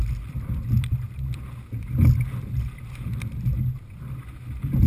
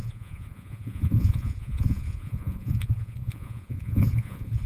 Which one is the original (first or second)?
first